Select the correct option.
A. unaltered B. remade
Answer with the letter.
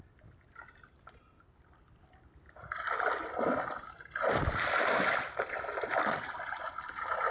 A